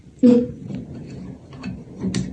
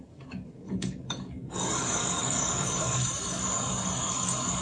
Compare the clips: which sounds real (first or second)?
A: first